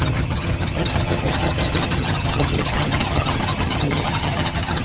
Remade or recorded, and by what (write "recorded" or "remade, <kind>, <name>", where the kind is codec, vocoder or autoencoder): remade, vocoder, HiFi-GAN